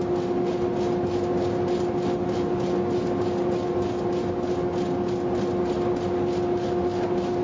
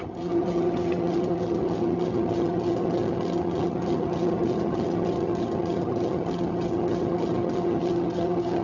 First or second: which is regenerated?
second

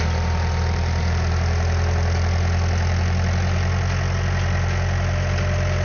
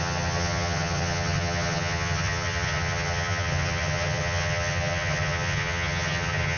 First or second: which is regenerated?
second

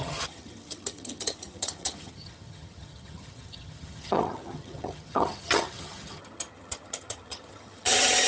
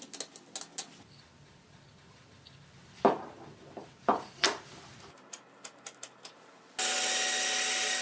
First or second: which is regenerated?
first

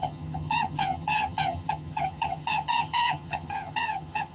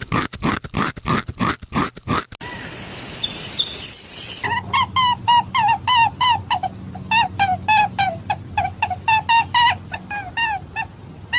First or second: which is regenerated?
first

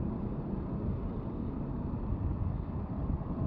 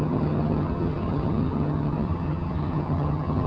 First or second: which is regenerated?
second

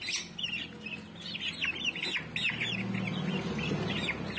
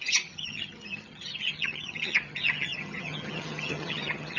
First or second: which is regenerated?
second